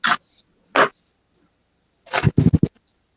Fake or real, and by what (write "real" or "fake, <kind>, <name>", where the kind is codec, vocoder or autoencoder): real